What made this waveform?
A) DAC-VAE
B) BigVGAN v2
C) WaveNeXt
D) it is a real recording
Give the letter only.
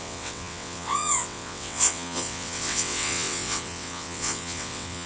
C